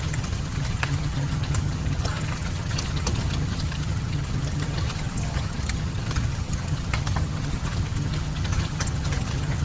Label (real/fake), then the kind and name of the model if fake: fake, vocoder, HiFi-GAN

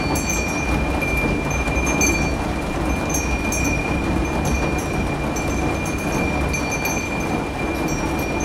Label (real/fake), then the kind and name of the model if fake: real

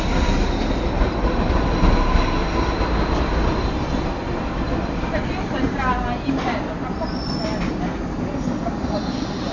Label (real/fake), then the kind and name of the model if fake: real